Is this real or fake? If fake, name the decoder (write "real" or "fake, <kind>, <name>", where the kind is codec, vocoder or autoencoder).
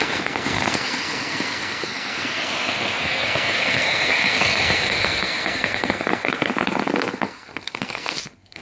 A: fake, codec, SNAC